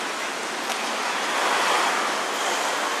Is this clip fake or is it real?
real